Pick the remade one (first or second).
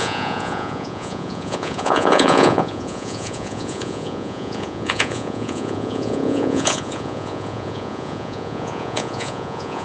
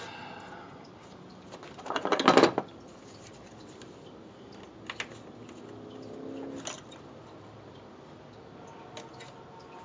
first